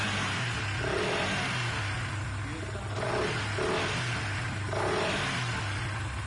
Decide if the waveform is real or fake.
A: real